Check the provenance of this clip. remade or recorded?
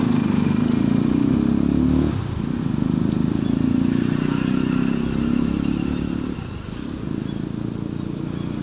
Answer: recorded